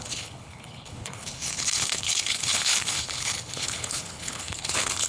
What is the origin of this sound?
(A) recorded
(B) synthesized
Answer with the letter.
B